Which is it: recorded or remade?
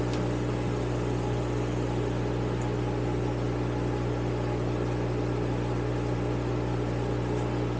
recorded